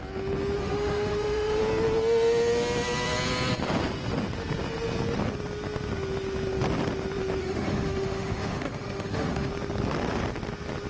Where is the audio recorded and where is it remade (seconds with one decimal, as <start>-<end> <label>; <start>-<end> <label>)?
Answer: 0.0-0.6 recorded; 0.6-1.6 remade; 1.6-7.4 recorded; 7.4-9.5 remade; 9.5-10.9 recorded